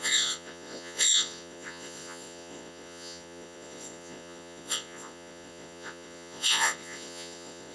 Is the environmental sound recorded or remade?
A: remade